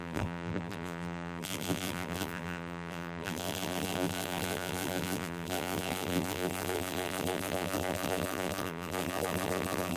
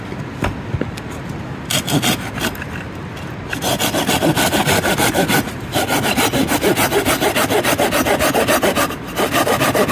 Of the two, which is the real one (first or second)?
second